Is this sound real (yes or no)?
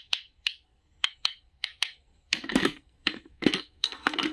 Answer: no